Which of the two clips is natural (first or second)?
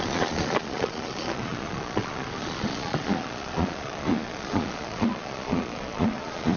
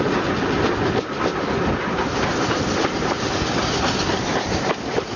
second